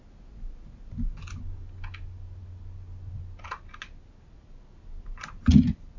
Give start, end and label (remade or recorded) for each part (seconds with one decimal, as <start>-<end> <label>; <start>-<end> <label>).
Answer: 0.0-6.0 recorded